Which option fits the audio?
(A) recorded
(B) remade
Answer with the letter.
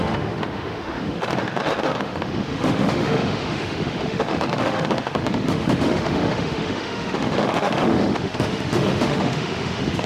B